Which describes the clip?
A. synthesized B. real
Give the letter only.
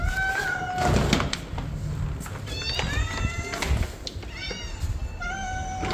B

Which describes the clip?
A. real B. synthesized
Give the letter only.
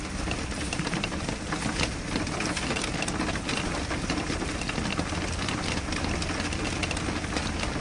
A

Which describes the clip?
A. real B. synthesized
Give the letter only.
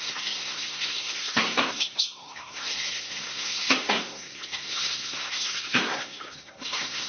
B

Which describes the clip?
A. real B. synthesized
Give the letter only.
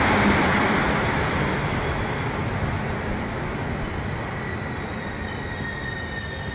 A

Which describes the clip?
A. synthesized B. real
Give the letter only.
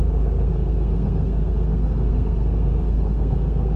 A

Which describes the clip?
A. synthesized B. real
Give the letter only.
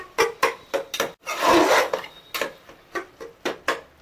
B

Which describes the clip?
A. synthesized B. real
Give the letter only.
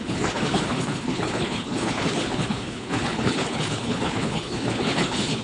A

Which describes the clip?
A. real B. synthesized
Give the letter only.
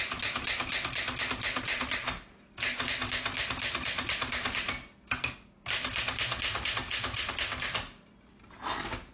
A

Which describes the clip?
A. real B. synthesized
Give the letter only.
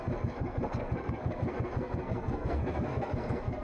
B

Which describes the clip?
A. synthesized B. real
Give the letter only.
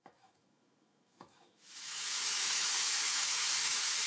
A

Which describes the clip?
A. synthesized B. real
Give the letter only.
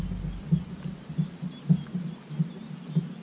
B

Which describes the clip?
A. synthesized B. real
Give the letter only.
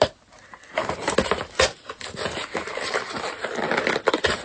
B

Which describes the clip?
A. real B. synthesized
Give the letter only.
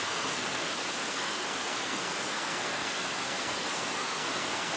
B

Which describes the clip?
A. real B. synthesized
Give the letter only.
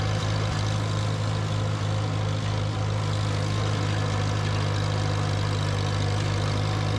A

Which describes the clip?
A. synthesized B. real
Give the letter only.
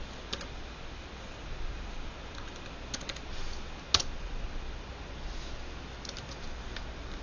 B